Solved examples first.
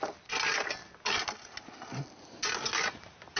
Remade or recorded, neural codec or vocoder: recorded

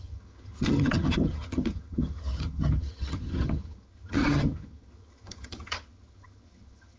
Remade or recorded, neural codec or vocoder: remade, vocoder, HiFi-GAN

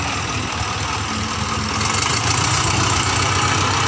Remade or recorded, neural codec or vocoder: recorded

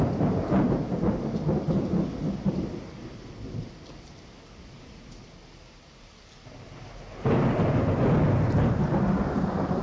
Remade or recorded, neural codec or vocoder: recorded